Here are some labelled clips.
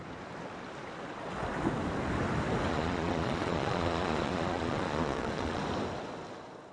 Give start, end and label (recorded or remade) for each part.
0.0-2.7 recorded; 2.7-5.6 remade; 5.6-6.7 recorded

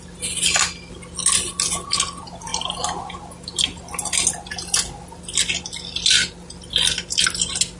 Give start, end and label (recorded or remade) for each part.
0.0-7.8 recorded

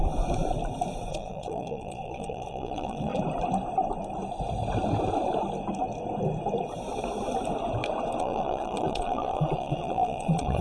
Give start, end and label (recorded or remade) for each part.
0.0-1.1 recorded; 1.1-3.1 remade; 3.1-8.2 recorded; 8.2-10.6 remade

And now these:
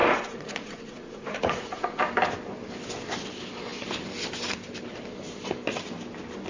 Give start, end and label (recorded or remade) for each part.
0.0-2.0 remade; 2.0-6.5 recorded

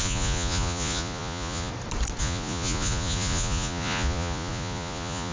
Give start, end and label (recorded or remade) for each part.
0.0-1.7 remade; 1.7-2.2 recorded; 2.2-5.3 remade

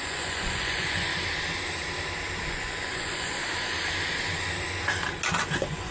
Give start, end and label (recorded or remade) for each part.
0.0-1.1 remade; 1.1-2.5 recorded; 2.5-3.4 remade; 3.4-5.5 recorded; 5.5-5.9 remade

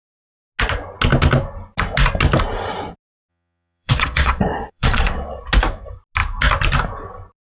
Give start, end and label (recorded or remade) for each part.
0.0-3.3 recorded; 3.3-5.5 remade; 5.5-7.6 recorded